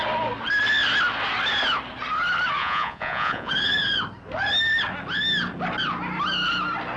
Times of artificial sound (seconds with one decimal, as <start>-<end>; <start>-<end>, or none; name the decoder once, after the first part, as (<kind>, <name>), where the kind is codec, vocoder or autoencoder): 2.6-3.5 (vocoder, Vocos)